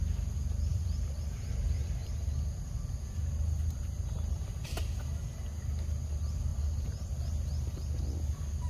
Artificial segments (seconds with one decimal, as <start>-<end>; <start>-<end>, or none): 0.7-4.8; 6.5-8.1